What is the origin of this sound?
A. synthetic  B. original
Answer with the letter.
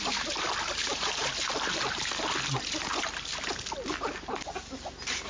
B